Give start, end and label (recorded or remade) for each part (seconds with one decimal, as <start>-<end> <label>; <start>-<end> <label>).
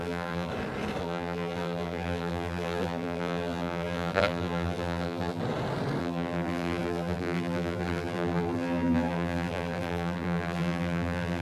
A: 0.0-0.5 remade; 0.5-1.0 recorded; 1.0-5.4 remade; 5.4-6.0 recorded; 6.0-11.4 remade